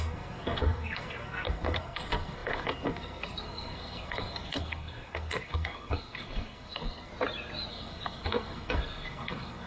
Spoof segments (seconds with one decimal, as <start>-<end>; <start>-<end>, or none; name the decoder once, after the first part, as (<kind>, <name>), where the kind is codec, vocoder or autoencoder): 0.0-7.1 (codec, SNAC); 7.7-9.7